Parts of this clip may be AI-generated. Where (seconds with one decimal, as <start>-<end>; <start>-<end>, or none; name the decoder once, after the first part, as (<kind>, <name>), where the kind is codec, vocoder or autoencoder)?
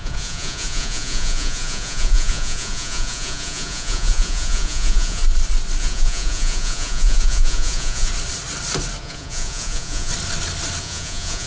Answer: 0.0-5.2 (vocoder, Vocos); 5.8-8.1; 9.0-10.1; 10.8-11.5